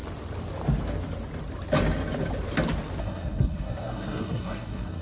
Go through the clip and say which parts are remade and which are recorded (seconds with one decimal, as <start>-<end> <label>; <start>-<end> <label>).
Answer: 0.0-3.0 recorded; 3.0-5.0 remade